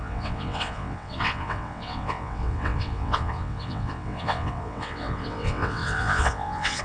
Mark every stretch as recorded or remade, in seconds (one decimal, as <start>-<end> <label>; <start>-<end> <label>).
0.0-6.8 remade